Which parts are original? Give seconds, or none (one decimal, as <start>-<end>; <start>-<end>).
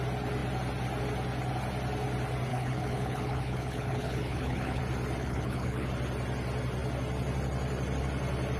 0.0-2.5; 4.8-5.2; 5.9-8.6